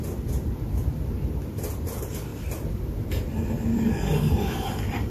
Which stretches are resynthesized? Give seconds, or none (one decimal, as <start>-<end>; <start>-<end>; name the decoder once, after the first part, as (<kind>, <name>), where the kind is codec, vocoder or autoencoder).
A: 3.7-5.1 (codec, DAC)